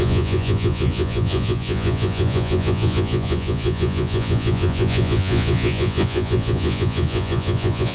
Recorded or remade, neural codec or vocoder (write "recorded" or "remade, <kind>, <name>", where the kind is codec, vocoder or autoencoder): remade, vocoder, Vocos